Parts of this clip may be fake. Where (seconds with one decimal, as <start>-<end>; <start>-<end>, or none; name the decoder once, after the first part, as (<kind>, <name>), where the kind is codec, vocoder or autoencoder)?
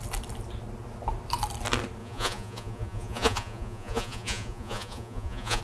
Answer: 2.0-5.6 (vocoder, Vocos)